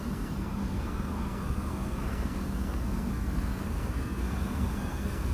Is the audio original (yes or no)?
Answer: no